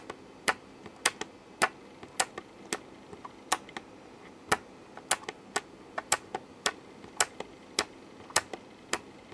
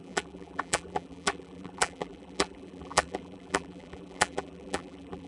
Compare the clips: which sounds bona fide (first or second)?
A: first